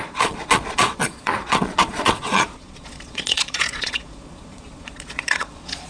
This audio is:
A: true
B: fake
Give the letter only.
B